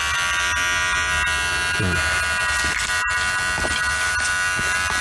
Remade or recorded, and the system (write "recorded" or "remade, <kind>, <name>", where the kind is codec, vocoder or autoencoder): recorded